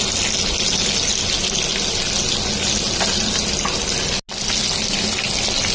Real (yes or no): yes